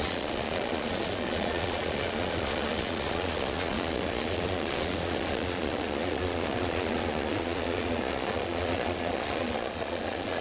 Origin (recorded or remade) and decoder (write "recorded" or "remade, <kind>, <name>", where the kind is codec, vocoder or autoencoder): remade, vocoder, Vocos